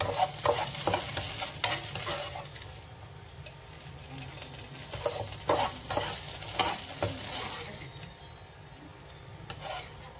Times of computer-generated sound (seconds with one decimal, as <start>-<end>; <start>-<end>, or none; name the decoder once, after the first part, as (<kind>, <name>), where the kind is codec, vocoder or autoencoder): none